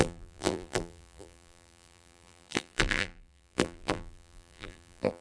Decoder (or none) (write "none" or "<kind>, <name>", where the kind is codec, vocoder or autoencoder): vocoder, BigVGAN v2